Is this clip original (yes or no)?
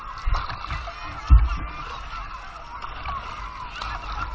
yes